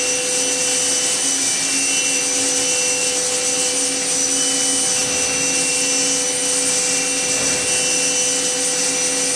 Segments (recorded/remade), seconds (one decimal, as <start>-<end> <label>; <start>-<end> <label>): 0.0-9.4 recorded